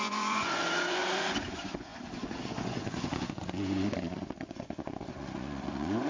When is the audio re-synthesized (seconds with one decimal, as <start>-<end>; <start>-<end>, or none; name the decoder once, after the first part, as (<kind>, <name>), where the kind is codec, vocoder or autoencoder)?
0.0-6.1 (vocoder, Vocos)